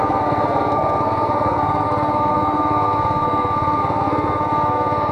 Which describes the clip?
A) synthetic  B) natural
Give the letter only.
A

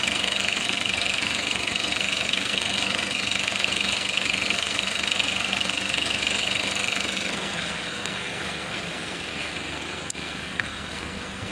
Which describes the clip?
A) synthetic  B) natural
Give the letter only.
A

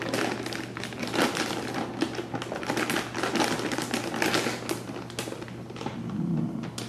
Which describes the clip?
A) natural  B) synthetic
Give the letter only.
A